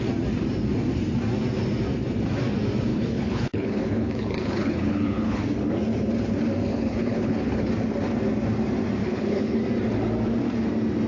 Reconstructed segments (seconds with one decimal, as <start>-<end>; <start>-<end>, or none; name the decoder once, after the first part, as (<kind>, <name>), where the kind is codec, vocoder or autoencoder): 2.9-5.4 (codec, HILCodec); 6.7-7.7; 9.0-9.6